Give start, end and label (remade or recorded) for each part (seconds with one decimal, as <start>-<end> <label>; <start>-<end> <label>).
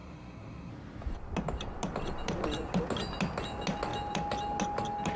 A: 0.0-0.7 remade; 0.7-5.2 recorded